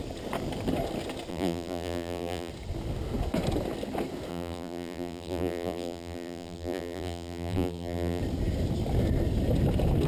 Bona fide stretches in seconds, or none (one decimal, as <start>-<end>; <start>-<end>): 0.0-1.3; 2.5-4.3; 8.2-10.1